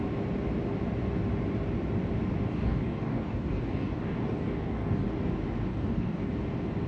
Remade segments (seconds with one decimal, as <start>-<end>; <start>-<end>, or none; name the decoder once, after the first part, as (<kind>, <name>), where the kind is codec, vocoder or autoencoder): 2.5-5.2 (codec, DAC); 5.7-6.3